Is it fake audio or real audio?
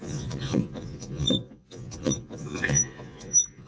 fake